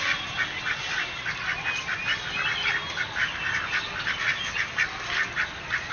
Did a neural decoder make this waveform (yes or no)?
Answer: no